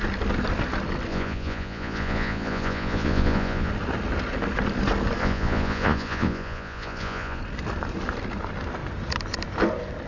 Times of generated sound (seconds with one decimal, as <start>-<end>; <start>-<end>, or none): 1.1-3.7; 5.2-7.4

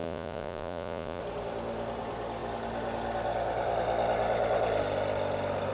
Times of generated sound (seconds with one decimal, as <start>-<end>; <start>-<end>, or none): 0.0-1.2

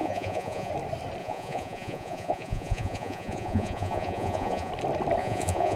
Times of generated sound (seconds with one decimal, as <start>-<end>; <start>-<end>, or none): 0.0-0.7; 1.2-4.7; 5.2-5.8

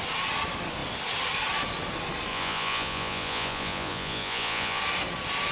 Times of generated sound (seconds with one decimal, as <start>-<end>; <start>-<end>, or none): 2.3-4.8

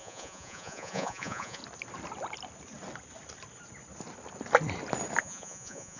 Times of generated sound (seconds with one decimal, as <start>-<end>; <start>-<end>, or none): 0.0-1.6; 5.2-6.0

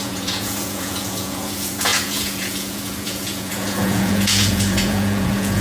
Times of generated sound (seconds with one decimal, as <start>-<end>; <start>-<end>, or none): 0.0-5.6

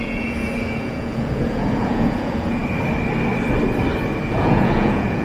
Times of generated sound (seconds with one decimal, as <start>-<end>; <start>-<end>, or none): 0.0-2.6; 4.3-5.2

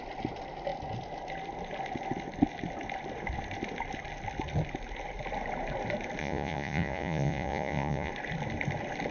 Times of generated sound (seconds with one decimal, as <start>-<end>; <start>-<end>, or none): 6.2-8.1